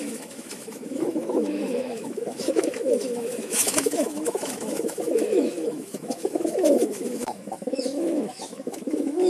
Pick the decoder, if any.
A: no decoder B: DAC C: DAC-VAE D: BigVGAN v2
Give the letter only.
C